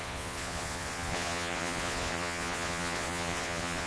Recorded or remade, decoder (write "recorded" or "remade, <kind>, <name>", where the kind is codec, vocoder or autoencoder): remade, vocoder, Vocos